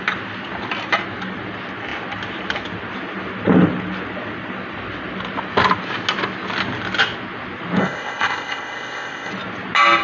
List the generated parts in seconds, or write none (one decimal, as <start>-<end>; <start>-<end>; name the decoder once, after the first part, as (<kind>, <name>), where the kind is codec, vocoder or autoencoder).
7.8-9.3 (codec, ZipCodec)